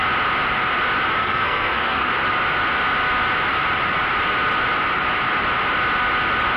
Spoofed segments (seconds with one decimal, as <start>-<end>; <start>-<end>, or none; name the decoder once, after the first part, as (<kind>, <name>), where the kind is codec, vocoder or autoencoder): 1.2-2.1 (codec, SNAC)